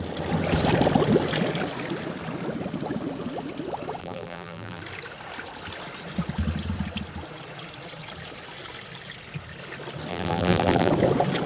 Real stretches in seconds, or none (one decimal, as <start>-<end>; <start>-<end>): 0.0-4.0; 4.8-10.1; 10.9-11.5